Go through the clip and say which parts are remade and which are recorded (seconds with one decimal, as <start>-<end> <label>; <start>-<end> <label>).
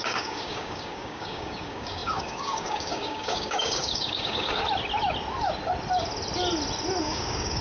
0.0-4.6 remade; 4.6-7.0 recorded; 7.0-7.6 remade